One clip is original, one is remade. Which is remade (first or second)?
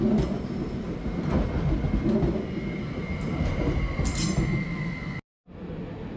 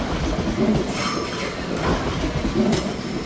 second